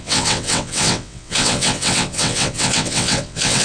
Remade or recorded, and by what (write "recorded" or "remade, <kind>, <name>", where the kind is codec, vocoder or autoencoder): remade, vocoder, WaveNeXt